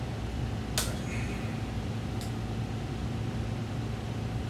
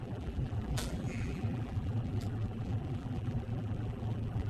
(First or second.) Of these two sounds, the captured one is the first